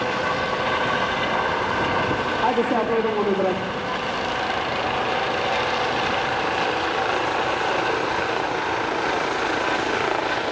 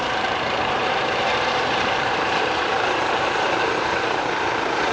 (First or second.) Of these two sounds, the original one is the first